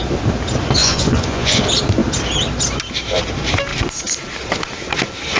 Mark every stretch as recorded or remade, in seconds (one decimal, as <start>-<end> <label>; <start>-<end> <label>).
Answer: 0.0-0.8 recorded; 0.8-1.6 remade; 1.6-5.4 recorded